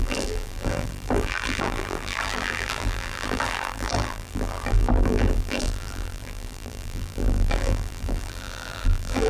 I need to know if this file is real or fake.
fake